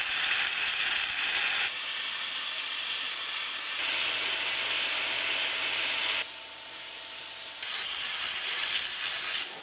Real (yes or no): yes